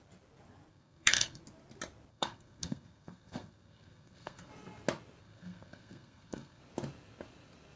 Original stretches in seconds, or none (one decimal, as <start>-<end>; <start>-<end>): 0.0-0.7; 1.4-2.1; 4.5-5.2; 6.6-7.8